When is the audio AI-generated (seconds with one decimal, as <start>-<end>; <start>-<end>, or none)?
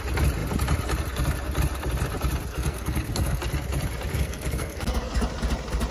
2.5-3.4; 4.1-5.2